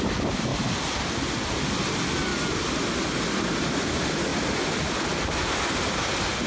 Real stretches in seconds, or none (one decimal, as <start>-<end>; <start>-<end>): 0.0-0.5; 1.0-6.5